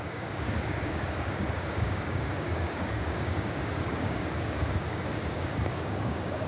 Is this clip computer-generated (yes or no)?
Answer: yes